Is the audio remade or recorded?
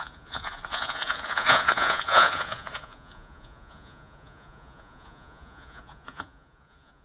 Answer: remade